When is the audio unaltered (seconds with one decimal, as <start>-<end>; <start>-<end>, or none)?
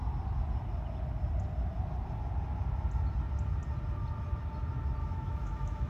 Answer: 0.0-5.0